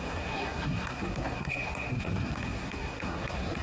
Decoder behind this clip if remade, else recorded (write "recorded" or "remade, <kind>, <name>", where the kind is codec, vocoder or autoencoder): remade, codec, SNAC